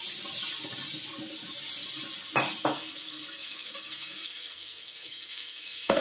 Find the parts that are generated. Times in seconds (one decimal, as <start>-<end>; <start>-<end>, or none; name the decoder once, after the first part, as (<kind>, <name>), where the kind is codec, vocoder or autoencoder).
2.7-6.0 (codec, SNAC)